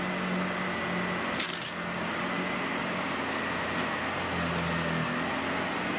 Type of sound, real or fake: real